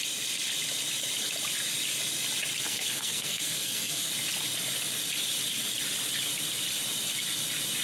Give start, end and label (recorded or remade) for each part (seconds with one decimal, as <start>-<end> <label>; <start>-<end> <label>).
0.0-2.6 recorded; 2.6-4.1 remade; 4.1-7.8 recorded